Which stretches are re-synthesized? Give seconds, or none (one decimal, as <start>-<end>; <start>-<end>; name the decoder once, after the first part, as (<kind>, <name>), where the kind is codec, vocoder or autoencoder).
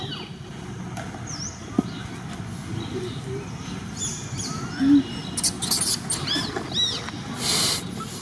none